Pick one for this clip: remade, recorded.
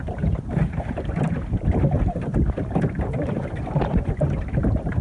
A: remade